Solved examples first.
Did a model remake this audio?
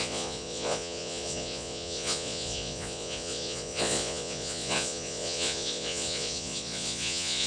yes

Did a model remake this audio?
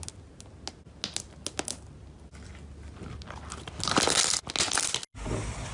no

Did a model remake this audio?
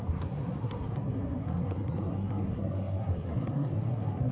yes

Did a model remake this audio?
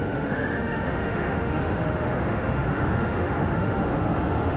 yes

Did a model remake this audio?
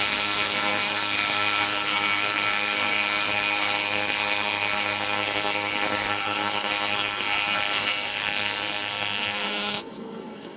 yes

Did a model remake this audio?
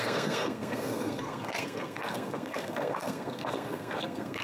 yes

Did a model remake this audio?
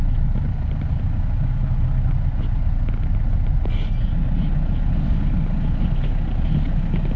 no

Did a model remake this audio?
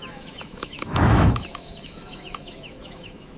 yes